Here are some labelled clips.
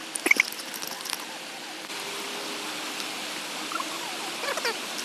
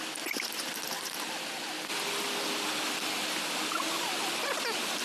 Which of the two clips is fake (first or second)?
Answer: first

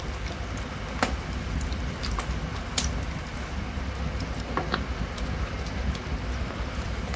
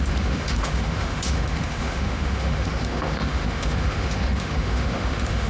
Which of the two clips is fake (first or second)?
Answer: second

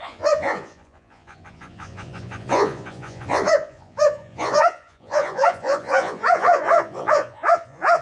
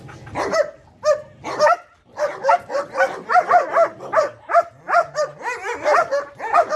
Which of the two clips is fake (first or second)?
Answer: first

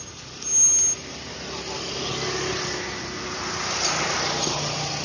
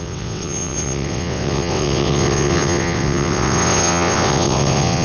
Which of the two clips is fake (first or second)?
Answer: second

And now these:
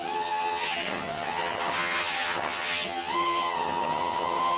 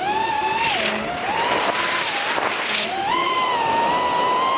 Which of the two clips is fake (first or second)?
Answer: first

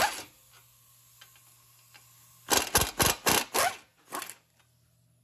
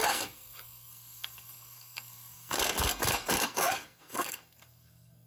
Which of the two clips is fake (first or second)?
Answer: second